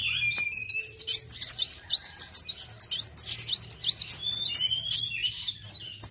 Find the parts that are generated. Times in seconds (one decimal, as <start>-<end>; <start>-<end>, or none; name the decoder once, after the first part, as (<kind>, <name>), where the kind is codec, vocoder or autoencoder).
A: 0.0-1.9 (vocoder, BigVGAN v2); 5.2-6.1